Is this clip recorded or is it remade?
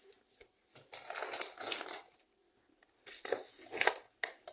recorded